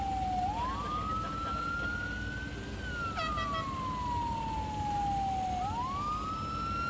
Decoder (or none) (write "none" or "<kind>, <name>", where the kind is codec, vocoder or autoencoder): none